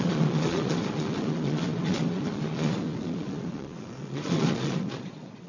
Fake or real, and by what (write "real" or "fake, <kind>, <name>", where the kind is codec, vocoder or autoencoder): fake, vocoder, Vocos